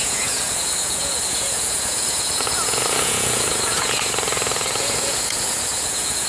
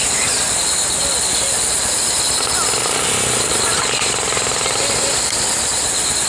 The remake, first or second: first